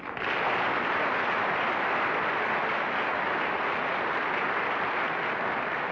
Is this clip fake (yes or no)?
no